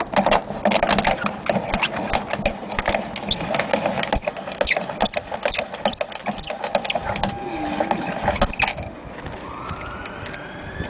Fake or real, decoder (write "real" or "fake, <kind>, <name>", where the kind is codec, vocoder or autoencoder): real